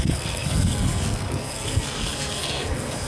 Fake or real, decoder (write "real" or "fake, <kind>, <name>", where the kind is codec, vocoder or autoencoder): fake, codec, SNAC